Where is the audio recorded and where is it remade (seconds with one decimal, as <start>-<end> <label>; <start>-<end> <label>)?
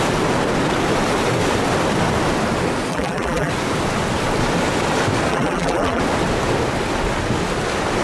0.0-2.9 recorded; 2.9-3.5 remade; 3.5-5.3 recorded; 5.3-6.0 remade; 6.0-8.0 recorded